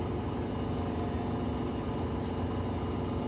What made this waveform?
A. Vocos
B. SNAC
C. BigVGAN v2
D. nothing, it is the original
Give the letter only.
D